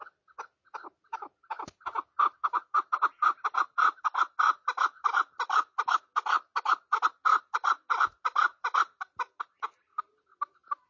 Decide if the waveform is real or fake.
real